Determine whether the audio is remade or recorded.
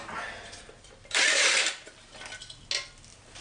recorded